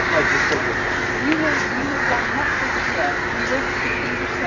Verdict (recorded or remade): recorded